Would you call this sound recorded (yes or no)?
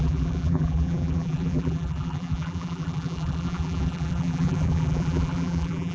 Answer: no